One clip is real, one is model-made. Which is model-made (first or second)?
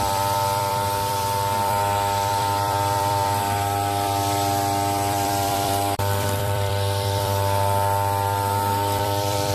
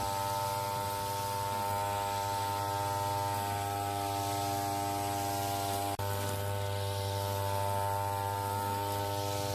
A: first